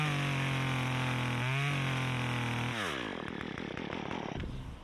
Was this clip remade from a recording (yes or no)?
no